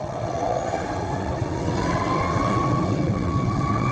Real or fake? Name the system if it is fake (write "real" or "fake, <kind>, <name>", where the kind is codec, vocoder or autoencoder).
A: fake, vocoder, WaveNeXt